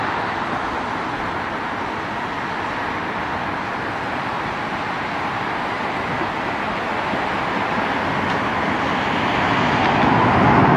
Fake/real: real